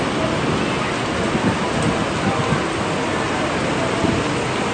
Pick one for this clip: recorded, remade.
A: recorded